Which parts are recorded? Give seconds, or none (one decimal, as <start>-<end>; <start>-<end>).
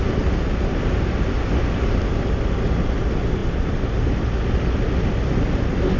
0.0-6.0